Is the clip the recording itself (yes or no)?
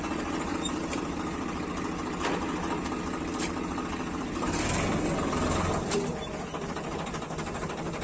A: yes